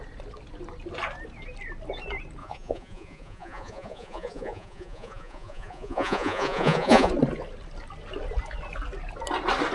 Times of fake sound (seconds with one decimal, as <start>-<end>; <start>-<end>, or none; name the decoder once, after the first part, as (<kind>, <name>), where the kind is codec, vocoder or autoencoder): 2.4-7.1 (vocoder, Vocos)